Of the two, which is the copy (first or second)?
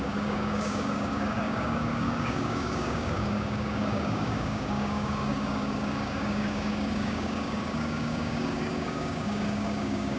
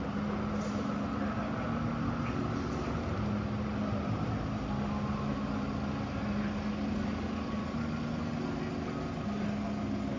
first